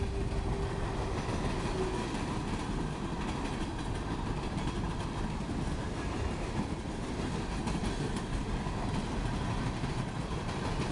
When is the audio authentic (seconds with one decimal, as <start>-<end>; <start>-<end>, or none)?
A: 0.0-10.9